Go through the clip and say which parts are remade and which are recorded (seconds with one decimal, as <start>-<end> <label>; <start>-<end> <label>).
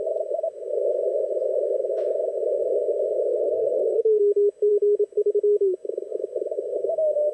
0.0-3.3 recorded; 3.3-4.2 remade; 4.2-7.3 recorded